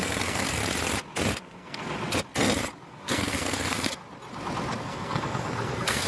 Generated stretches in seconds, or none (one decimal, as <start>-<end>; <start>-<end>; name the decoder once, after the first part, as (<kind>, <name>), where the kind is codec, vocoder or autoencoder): 0.0-0.6 (codec, SNAC); 1.4-1.8; 2.9-4.0; 4.8-6.1